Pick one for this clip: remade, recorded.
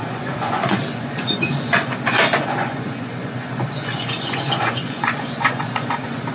remade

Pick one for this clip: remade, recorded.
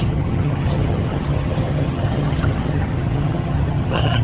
remade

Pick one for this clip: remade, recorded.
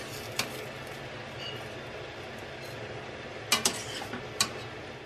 recorded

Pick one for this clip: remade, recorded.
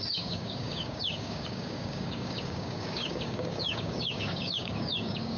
remade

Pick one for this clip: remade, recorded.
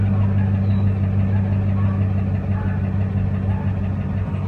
recorded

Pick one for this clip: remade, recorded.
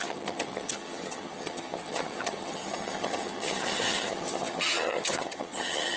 remade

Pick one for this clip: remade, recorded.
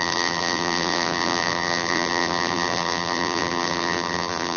remade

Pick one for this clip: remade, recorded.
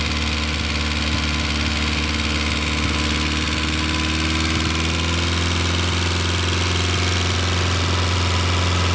recorded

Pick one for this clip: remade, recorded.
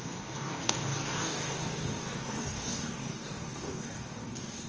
remade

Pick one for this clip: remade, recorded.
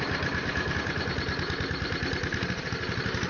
recorded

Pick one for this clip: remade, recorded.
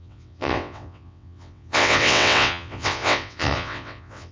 remade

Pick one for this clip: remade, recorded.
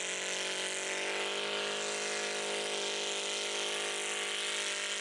recorded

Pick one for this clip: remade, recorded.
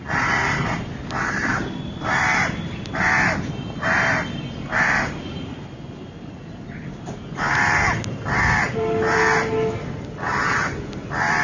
recorded